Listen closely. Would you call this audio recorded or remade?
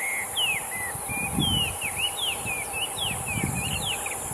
recorded